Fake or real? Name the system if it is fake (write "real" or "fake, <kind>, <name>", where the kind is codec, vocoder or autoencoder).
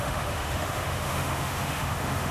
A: fake, autoencoder, DAC-VAE